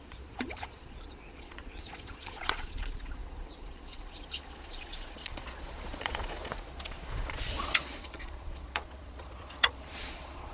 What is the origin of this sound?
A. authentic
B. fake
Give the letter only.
B